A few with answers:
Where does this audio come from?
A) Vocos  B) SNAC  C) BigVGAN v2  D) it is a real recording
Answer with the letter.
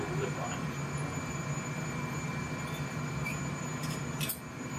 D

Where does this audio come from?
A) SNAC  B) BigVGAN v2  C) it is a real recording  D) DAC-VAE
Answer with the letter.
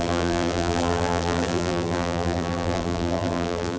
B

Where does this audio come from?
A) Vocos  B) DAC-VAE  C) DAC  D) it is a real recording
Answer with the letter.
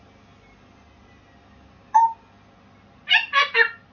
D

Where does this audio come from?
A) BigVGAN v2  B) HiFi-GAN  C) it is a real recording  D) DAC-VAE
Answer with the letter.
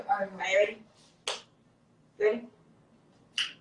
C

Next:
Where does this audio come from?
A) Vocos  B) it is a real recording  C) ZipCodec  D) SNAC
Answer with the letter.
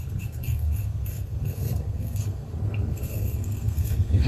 D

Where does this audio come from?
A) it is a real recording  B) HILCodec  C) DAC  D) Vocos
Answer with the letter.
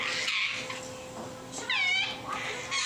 A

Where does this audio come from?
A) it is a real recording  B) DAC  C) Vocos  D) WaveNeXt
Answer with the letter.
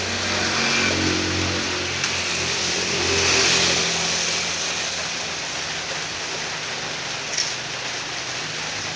A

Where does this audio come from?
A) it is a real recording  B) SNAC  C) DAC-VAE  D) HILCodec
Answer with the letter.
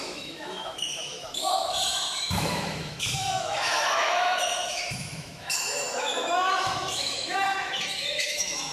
C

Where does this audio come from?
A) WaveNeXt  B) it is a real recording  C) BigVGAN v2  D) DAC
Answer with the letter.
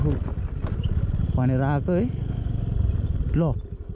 B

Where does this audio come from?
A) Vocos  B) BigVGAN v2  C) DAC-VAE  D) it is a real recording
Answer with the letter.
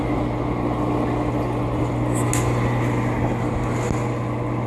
D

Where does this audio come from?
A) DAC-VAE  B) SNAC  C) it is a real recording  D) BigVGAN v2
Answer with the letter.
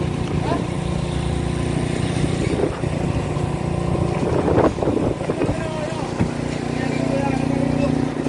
C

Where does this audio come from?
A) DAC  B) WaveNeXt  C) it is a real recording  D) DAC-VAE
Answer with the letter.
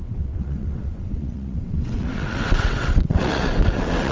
B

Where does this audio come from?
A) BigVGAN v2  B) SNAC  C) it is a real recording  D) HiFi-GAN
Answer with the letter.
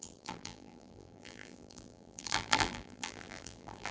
A